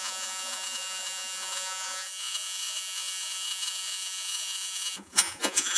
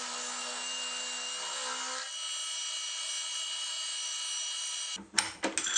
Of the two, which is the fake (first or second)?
first